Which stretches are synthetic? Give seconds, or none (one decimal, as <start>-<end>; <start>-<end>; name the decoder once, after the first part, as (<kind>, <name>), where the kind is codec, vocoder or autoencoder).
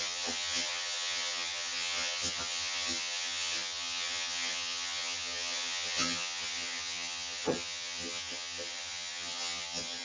0.0-10.0 (vocoder, HiFi-GAN)